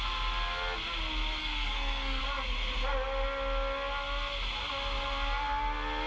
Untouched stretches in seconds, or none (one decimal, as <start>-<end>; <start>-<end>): 0.0-1.4; 2.2-6.1